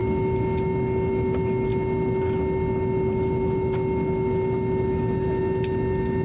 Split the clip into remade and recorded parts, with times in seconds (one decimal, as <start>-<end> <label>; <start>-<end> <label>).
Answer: 0.0-6.2 recorded